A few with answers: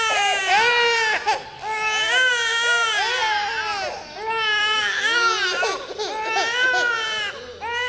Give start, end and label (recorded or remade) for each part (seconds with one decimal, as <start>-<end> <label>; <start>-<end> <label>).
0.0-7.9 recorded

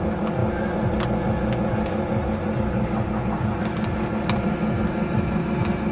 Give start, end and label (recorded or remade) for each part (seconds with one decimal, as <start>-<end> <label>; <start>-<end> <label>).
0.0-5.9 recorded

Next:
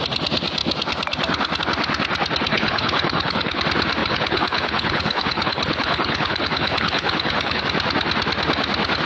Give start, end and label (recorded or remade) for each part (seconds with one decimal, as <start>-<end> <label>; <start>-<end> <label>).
0.0-2.5 recorded; 2.5-3.6 remade; 3.6-4.0 recorded; 4.0-7.6 remade; 7.6-9.1 recorded

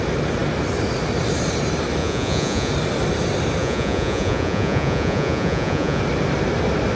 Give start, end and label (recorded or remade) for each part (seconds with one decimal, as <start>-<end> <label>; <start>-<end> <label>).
0.0-2.0 recorded; 2.0-2.7 remade; 2.7-3.6 recorded; 3.6-6.0 remade; 6.0-7.0 recorded

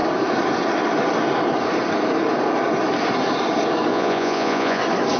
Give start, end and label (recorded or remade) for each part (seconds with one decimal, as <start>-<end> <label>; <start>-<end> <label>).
0.0-3.9 recorded; 3.9-4.8 remade; 4.8-5.2 recorded

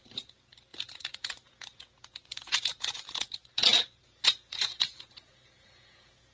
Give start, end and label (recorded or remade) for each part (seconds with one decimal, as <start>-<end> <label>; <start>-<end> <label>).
0.0-6.3 remade